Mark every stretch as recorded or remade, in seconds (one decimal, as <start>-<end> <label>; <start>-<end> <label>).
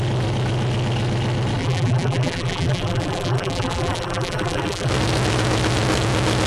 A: 0.0-1.6 recorded; 1.6-4.9 remade; 4.9-6.5 recorded